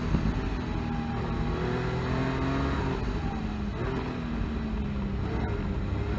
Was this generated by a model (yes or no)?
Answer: no